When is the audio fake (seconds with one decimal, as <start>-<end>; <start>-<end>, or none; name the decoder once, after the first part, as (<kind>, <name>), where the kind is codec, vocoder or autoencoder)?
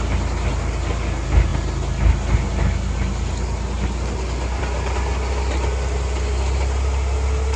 none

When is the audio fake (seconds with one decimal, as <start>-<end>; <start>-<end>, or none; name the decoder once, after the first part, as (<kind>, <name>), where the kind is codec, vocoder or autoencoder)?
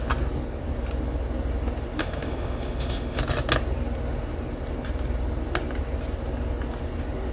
2.0-3.2 (autoencoder, DAC-VAE)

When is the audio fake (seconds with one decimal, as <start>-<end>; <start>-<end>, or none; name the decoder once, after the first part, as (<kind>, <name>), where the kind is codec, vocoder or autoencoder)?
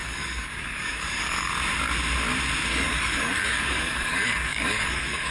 0.0-1.5 (codec, DAC); 2.7-5.3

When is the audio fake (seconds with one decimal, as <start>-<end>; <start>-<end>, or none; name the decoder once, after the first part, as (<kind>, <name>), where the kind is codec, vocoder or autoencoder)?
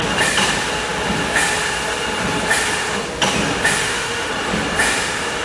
3.8-4.3 (autoencoder, DAC-VAE)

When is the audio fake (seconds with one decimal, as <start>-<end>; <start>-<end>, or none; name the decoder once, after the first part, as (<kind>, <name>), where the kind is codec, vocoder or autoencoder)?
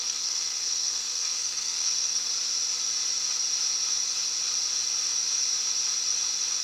0.0-2.3 (codec, SNAC)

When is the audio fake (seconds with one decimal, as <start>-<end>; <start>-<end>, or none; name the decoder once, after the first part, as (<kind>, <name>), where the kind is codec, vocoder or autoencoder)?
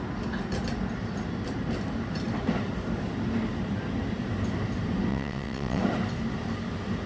5.1-5.8 (vocoder, WaveNeXt)